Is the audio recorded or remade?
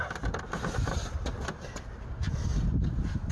recorded